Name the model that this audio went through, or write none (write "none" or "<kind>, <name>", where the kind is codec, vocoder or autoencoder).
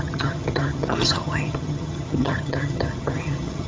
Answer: vocoder, HiFi-GAN